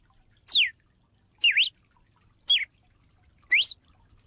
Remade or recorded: recorded